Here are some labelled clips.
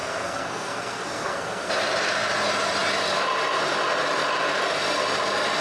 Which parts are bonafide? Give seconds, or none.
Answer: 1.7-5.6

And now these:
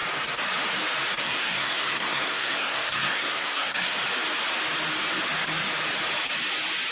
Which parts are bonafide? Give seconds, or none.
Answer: 0.0-1.2; 3.9-6.9

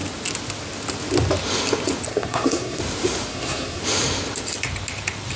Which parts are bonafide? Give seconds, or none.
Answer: 0.0-2.1; 2.8-3.3; 3.8-5.4

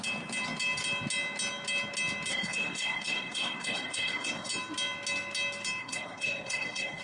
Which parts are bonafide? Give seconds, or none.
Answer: 0.0-2.3; 4.5-5.8